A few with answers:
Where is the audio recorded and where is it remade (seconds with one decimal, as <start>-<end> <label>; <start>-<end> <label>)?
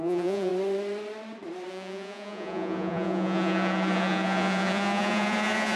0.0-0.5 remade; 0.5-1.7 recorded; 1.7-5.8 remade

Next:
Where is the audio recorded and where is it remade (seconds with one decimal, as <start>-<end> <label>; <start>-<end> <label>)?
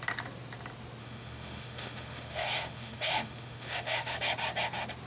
0.0-1.0 recorded; 1.0-4.1 remade; 4.1-5.1 recorded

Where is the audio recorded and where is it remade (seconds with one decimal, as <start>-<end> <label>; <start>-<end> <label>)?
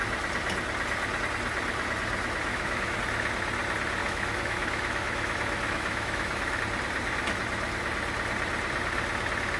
0.0-2.5 recorded; 2.5-3.0 remade; 3.0-4.0 recorded; 4.0-6.6 remade; 6.6-9.6 recorded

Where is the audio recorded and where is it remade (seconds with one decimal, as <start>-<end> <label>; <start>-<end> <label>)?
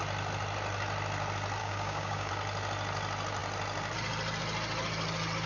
0.0-1.6 recorded; 1.6-2.3 remade; 2.3-5.5 recorded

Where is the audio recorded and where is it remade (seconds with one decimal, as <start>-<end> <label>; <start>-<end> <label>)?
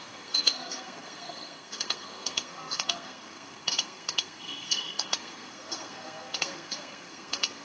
0.0-7.6 remade